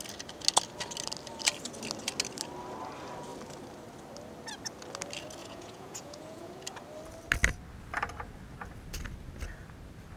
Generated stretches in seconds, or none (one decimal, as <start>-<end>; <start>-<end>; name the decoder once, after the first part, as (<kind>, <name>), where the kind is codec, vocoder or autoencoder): 5.4-6.5 (vocoder, Vocos)